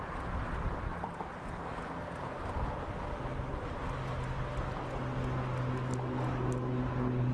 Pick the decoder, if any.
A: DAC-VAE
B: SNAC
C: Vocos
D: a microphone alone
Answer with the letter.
D